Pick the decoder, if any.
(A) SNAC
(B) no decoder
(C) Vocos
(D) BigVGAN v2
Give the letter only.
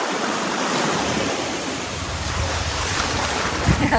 D